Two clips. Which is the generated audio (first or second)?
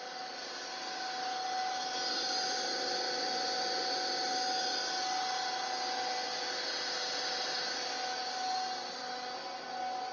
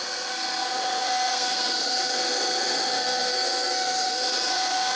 second